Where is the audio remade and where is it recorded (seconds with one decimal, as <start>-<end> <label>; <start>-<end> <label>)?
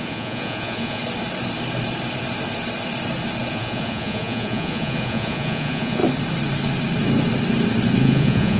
0.0-1.0 remade; 1.0-3.5 recorded; 3.5-6.0 remade; 6.0-8.0 recorded; 8.0-8.6 remade